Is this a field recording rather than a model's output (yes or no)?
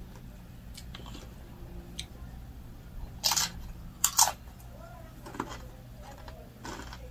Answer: no